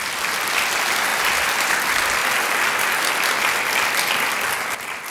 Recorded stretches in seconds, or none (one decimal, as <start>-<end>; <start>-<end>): 0.0-1.1; 1.7-5.1